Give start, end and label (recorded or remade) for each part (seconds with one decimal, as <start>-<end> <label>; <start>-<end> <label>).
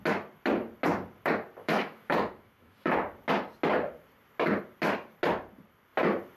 0.0-1.6 recorded; 1.6-2.9 remade; 2.9-6.4 recorded